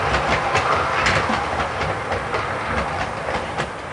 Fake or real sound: real